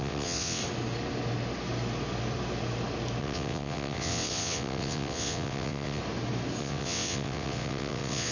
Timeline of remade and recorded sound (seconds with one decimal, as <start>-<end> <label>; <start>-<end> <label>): 0.0-0.6 remade; 0.6-3.2 recorded; 3.2-6.0 remade; 6.0-6.6 recorded; 6.6-8.3 remade